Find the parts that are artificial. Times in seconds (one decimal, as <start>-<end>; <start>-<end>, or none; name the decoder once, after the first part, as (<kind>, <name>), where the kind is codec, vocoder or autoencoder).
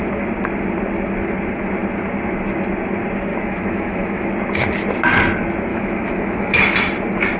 3.3-4.3 (autoencoder, DAC-VAE); 5.7-6.6